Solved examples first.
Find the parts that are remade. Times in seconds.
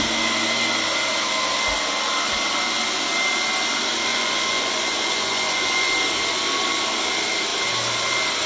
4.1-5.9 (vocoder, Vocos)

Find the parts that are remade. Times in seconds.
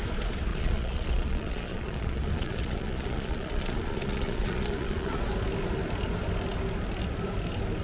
0.5-5.2 (vocoder, Vocos)